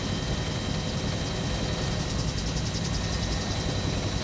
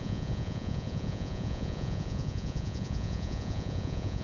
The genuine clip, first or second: first